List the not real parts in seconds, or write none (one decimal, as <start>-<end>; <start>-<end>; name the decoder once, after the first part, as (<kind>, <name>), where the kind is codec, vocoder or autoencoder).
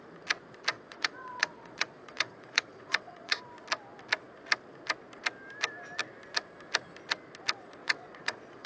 0.7-3.4 (vocoder, Vocos); 7.8-8.7